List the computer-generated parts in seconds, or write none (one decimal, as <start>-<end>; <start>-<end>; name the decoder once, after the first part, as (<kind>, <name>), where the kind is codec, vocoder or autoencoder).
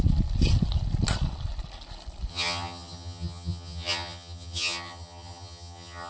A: 2.3-6.1 (vocoder, HiFi-GAN)